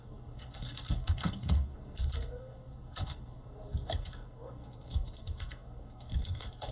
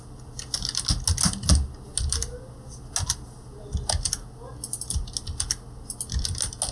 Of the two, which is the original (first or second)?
second